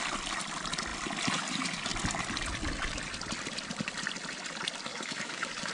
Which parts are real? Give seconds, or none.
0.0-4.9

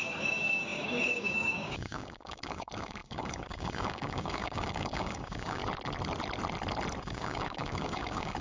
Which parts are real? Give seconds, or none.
5.6-7.0

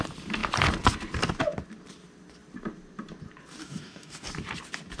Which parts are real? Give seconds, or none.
0.0-3.6; 4.3-5.0

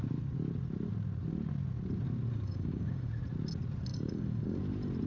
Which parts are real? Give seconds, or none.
0.0-2.3; 3.1-3.9; 4.6-5.1

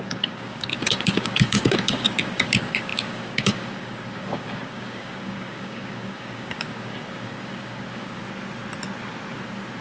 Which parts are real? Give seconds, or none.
8.2-9.8